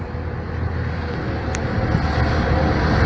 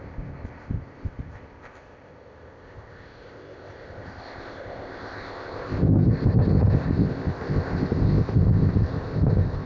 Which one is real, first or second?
first